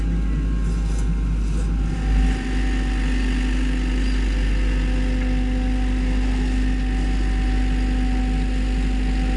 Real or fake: real